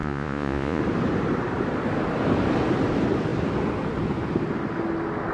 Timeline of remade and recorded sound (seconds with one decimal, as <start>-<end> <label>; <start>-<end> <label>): 0.0-0.8 remade; 0.8-5.3 recorded

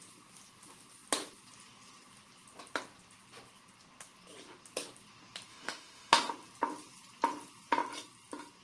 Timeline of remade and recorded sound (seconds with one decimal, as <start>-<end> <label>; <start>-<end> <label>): 0.0-5.5 recorded; 5.5-6.3 remade; 6.3-8.6 recorded

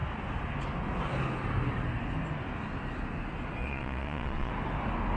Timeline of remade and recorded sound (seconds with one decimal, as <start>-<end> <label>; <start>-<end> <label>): 0.0-3.6 recorded; 3.6-4.5 remade; 4.5-5.2 recorded

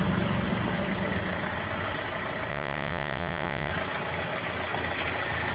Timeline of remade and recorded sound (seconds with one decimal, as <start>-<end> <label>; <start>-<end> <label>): 0.0-2.5 recorded; 2.5-3.7 remade; 3.7-5.5 recorded